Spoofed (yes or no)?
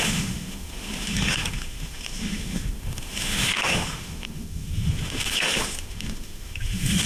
yes